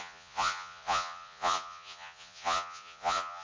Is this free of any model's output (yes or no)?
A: no